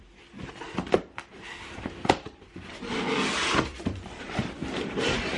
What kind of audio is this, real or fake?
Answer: fake